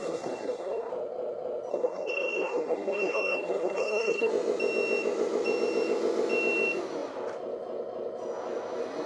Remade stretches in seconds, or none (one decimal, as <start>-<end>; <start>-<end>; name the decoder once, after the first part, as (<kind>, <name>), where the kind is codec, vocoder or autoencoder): 0.0-0.9 (codec, SNAC); 1.7-4.3